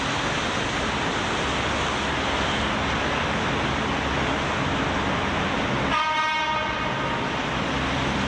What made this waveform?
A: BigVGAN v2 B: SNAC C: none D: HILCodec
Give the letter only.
C